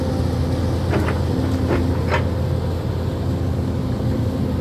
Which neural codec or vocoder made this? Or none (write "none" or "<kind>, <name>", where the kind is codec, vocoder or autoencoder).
none